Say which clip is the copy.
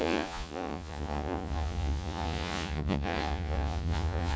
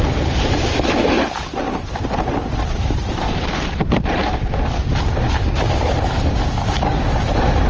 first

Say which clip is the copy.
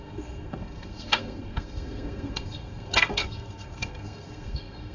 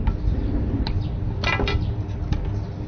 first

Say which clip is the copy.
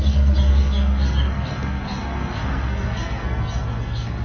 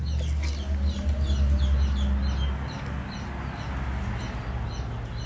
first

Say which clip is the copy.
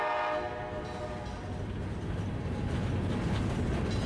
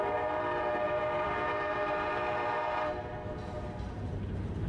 second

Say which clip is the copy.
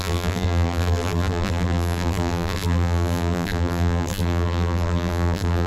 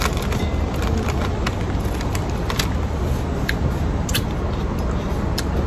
first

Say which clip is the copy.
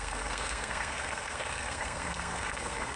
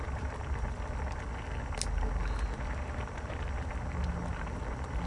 first